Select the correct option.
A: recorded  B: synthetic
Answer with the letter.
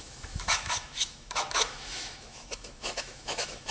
B